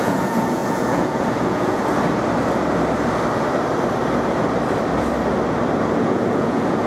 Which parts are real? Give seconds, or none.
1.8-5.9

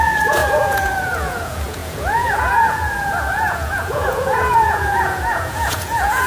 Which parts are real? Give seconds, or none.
none

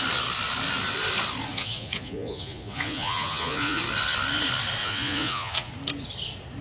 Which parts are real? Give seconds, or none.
0.0-1.5; 3.8-4.8; 5.7-6.6

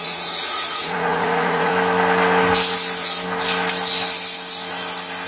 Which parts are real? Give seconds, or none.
1.7-5.3

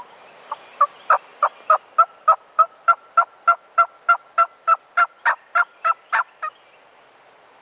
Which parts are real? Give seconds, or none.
0.0-7.6

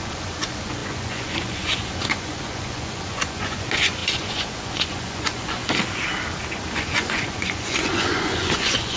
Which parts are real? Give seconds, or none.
5.6-6.7